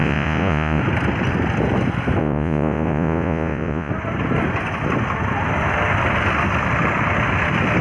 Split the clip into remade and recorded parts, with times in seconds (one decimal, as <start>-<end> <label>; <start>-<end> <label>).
0.0-0.8 remade; 0.8-2.2 recorded; 2.2-3.9 remade; 3.9-7.8 recorded